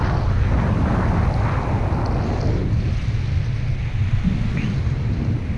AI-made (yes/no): no